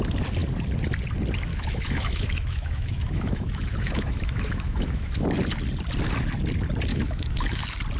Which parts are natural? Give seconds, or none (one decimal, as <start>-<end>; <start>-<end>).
0.0-1.5; 5.2-6.9; 7.6-8.0

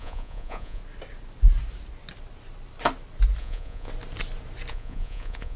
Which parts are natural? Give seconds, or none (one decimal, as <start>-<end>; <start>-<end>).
0.8-3.4; 3.9-4.7

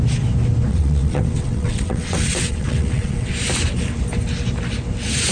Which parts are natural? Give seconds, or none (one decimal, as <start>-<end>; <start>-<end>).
0.0-0.7; 3.3-5.3

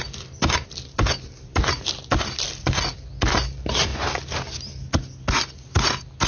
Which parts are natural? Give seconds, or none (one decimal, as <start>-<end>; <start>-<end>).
0.0-6.3

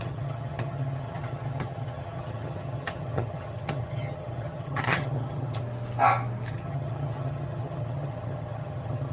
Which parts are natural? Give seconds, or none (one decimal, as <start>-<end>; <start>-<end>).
5.6-6.5

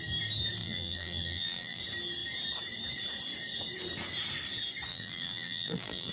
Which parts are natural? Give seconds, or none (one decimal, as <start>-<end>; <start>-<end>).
0.0-0.6; 1.8-4.9